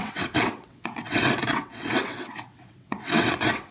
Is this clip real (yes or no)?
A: no